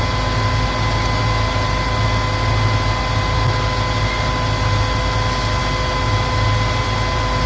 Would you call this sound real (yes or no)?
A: yes